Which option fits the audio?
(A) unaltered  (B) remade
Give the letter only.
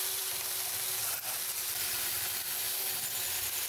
B